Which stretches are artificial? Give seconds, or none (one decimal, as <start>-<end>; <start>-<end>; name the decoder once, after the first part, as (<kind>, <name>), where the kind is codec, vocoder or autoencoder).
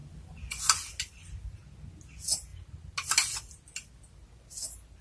none